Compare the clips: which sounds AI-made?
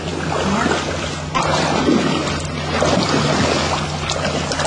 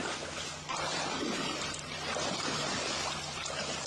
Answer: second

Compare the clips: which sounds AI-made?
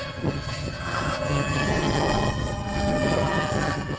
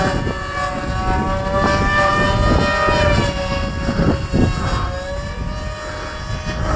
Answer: first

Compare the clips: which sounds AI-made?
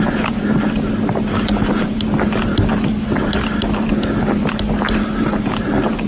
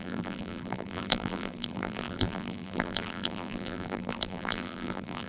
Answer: second